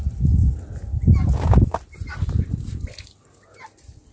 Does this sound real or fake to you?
real